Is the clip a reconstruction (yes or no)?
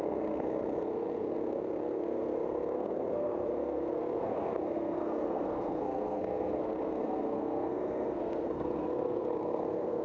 yes